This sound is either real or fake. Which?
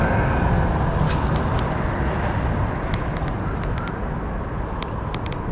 real